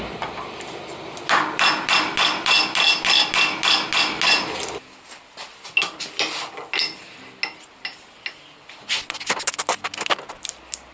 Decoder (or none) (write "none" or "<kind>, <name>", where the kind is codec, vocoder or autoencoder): none